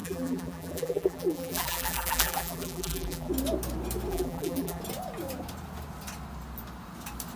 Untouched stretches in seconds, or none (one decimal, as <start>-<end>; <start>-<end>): 3.3-4.1; 4.8-7.4